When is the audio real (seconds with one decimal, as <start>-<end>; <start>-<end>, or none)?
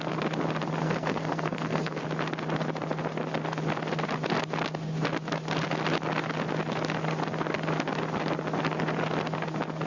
0.0-0.8; 2.0-9.9